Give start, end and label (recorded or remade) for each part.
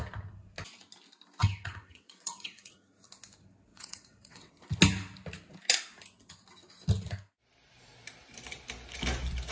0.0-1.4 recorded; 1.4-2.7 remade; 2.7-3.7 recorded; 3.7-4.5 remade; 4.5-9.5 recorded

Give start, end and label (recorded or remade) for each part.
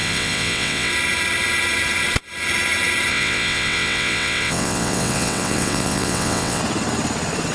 0.0-0.9 remade; 0.9-3.1 recorded; 3.1-6.6 remade; 6.6-7.5 recorded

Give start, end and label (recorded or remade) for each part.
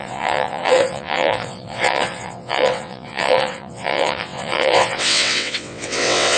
0.0-6.4 remade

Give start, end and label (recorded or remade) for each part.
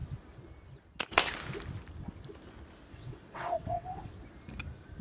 0.0-2.9 recorded; 2.9-4.1 remade; 4.1-5.0 recorded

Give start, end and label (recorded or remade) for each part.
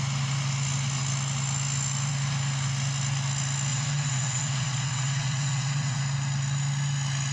0.0-3.7 recorded; 3.7-6.0 remade; 6.0-7.3 recorded